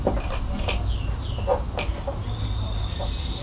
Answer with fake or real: real